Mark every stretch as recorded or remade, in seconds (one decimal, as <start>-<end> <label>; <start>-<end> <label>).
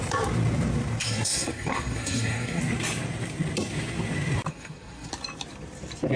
0.0-1.0 recorded; 1.0-2.6 remade; 2.6-4.5 recorded; 4.5-5.1 remade; 5.1-6.2 recorded